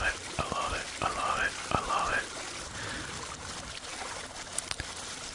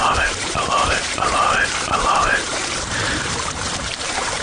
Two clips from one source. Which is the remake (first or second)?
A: second